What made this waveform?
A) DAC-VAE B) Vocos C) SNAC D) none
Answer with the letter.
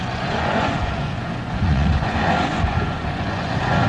B